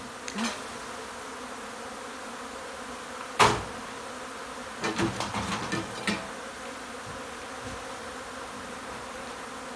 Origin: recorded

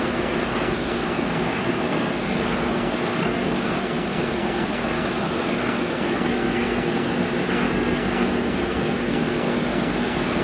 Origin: remade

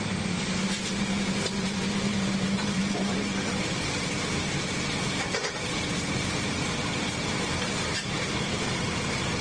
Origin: remade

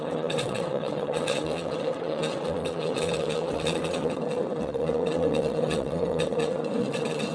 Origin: remade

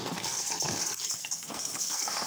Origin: remade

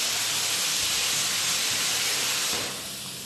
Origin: recorded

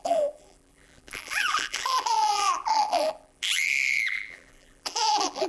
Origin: remade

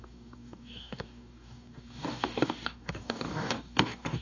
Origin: remade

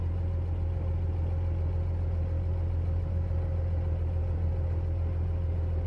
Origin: recorded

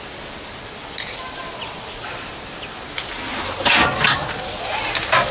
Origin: recorded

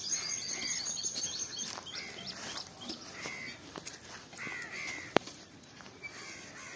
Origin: remade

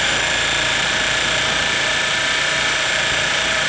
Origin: remade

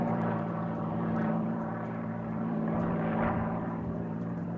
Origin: remade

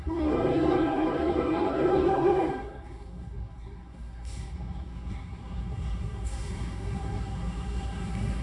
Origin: remade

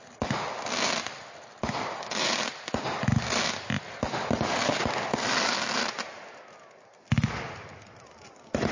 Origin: recorded